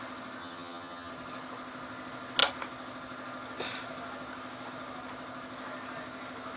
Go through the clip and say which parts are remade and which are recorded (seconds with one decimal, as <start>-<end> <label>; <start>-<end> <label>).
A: 0.0-0.4 recorded; 0.4-1.1 remade; 1.1-6.6 recorded